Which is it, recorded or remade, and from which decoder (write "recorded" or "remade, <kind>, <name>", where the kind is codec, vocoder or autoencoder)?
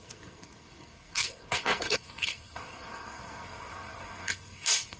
remade, codec, SNAC